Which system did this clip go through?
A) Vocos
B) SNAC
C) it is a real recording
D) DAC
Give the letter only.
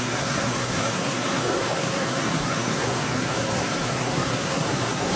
B